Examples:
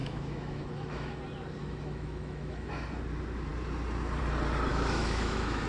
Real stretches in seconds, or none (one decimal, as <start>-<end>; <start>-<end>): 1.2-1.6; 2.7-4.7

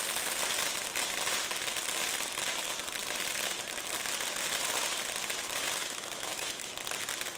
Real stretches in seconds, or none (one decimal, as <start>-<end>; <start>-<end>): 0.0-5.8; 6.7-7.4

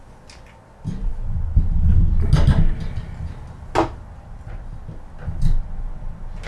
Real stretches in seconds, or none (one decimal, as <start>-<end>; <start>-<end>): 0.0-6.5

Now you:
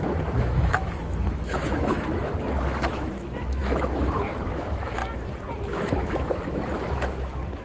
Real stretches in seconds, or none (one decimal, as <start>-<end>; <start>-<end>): 2.3-2.9; 5.0-5.6

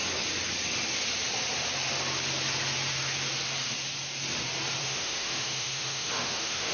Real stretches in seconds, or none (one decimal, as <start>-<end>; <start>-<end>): 0.0-4.8